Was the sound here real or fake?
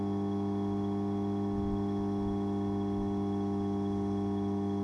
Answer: real